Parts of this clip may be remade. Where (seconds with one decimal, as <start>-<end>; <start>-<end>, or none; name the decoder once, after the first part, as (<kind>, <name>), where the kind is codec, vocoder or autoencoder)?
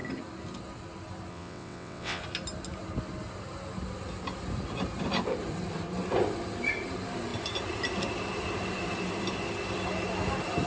1.3-2.2 (vocoder, WaveNeXt)